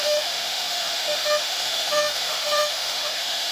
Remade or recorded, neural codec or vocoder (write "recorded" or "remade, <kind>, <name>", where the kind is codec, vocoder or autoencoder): remade, autoencoder, DAC-VAE